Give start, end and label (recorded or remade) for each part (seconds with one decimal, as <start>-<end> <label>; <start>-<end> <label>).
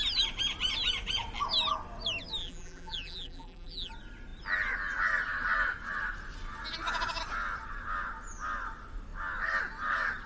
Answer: 0.0-2.4 recorded; 2.4-3.9 remade; 3.9-10.3 recorded